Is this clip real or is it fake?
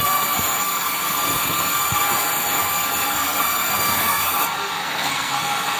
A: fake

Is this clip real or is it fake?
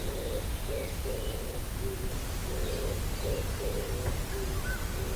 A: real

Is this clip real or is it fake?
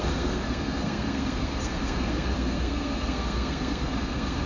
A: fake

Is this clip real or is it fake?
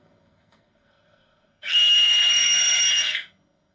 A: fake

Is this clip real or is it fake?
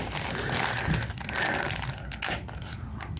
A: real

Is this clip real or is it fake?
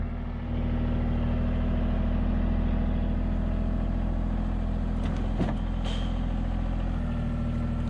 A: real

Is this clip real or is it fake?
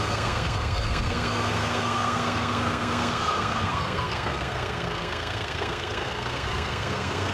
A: fake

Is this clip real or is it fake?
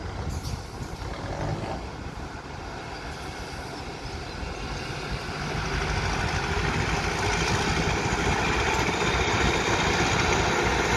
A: real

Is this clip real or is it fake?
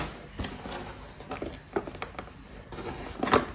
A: real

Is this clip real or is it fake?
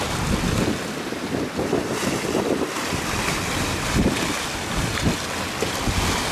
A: real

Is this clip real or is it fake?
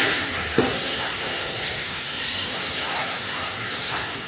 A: fake